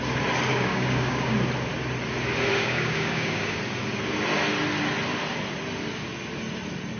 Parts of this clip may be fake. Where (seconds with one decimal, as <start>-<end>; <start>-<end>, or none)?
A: 0.5-1.3; 2.5-3.6